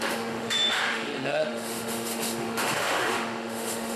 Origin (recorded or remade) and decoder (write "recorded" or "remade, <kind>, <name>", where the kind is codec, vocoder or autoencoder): remade, autoencoder, DAC-VAE